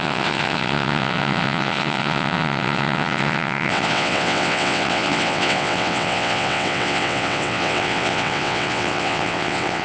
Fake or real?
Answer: fake